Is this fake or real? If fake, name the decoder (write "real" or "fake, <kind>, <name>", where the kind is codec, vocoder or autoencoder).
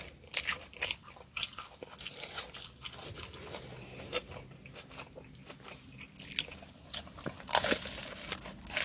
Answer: real